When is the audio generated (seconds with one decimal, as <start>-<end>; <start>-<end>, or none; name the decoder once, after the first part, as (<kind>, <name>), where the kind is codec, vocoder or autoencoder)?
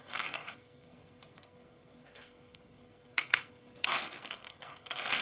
0.0-5.2 (codec, SNAC)